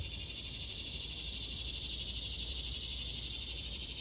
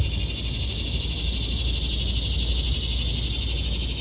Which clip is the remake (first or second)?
first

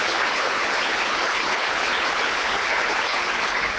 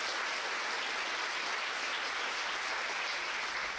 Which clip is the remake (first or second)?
first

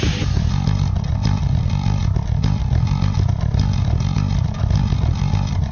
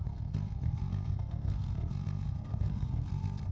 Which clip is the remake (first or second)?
second